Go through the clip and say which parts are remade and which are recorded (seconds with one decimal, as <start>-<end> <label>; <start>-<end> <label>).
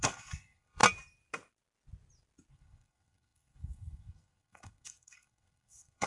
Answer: 0.0-0.8 remade; 0.8-2.5 recorded; 2.5-6.1 remade